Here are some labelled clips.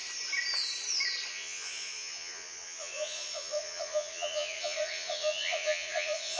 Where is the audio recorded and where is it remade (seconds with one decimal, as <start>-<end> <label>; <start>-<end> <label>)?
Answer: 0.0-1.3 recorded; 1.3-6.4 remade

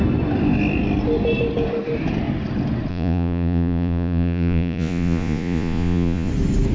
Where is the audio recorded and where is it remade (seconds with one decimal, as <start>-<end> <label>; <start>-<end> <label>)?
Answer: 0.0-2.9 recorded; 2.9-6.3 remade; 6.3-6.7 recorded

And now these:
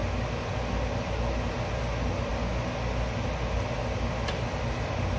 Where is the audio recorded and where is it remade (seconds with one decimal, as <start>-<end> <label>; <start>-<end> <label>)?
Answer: 0.0-5.2 recorded

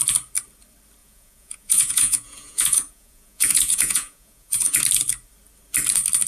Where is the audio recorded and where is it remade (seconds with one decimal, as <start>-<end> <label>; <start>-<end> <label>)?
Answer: 0.0-1.0 recorded; 1.0-4.8 remade; 4.8-6.3 recorded

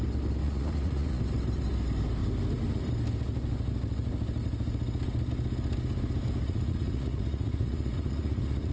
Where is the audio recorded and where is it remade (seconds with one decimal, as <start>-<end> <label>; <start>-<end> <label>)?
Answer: 0.0-0.4 recorded; 0.4-1.2 remade; 1.2-6.4 recorded; 6.4-8.7 remade

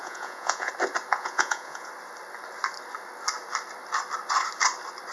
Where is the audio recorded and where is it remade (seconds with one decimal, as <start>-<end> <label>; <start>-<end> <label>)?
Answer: 0.0-0.7 remade; 0.7-1.1 recorded; 1.1-1.9 remade; 1.9-5.1 recorded